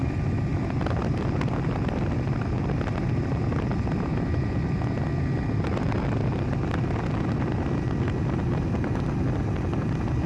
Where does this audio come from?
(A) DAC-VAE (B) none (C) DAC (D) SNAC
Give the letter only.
B